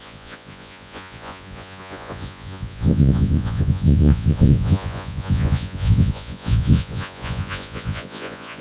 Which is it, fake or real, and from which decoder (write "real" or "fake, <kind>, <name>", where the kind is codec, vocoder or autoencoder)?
fake, vocoder, Vocos